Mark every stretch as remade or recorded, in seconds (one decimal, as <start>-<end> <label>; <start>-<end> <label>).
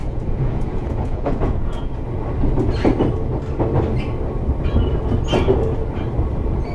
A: 0.0-1.9 remade; 1.9-6.7 recorded